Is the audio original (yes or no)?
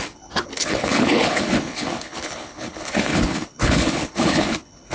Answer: no